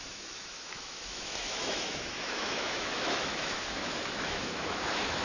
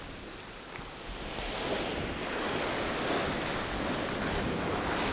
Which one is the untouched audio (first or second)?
second